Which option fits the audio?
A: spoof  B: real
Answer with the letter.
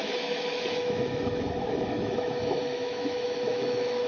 A